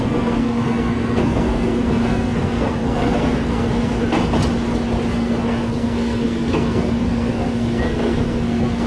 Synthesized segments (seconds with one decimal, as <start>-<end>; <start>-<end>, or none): 0.0-4.0; 5.1-8.9